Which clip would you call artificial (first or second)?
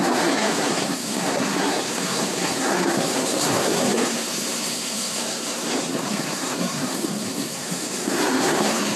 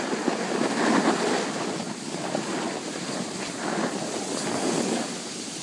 first